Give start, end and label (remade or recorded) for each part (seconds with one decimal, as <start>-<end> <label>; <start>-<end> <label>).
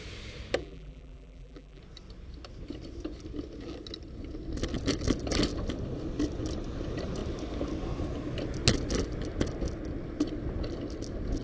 0.0-0.6 recorded; 0.6-1.8 remade; 1.8-11.4 recorded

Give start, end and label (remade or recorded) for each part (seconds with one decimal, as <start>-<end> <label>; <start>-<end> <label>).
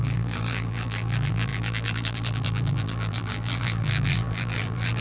0.0-5.0 remade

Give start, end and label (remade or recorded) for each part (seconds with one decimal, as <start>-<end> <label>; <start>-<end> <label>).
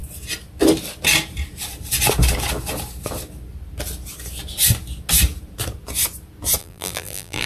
0.0-6.6 recorded; 6.6-7.5 remade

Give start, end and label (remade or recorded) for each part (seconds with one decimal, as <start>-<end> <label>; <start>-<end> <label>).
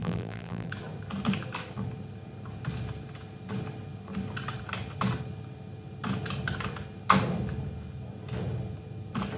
0.0-0.7 remade; 0.7-9.4 recorded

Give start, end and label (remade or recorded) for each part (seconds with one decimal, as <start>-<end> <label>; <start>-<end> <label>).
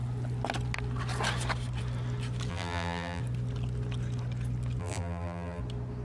0.0-2.5 recorded; 2.5-3.2 remade; 3.2-4.8 recorded; 4.8-5.6 remade; 5.6-6.0 recorded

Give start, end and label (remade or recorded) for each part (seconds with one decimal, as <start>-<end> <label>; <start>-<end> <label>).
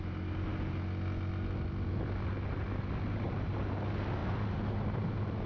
0.0-5.5 recorded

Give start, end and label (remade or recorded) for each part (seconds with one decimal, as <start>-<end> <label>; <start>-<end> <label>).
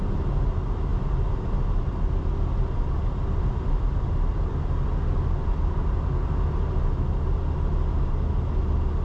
0.0-9.0 recorded